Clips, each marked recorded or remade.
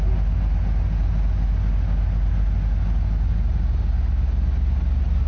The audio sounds recorded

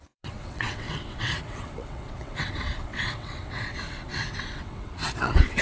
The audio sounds remade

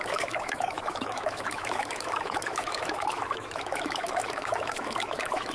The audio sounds remade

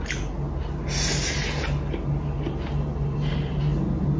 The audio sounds recorded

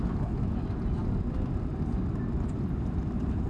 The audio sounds recorded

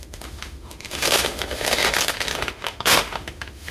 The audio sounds remade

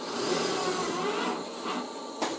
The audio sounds remade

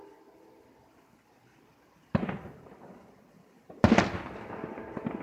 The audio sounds recorded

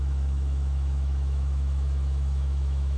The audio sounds remade